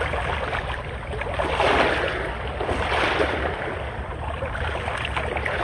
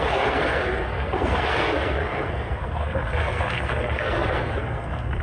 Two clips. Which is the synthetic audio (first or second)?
second